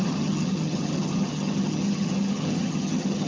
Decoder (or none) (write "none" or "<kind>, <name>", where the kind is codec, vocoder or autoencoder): vocoder, HiFi-GAN